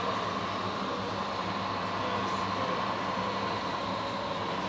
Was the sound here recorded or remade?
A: recorded